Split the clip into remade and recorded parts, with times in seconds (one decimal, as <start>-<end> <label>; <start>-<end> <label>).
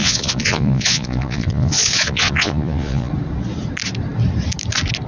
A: 0.0-3.1 remade; 3.1-5.1 recorded